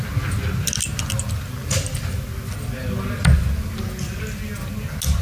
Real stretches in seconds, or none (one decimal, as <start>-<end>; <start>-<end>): 0.0-5.2